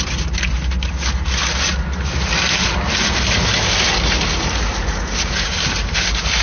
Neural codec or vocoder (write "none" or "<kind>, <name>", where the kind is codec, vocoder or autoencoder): none